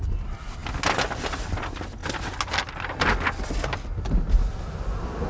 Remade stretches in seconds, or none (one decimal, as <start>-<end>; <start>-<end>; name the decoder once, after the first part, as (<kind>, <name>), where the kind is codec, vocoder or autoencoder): none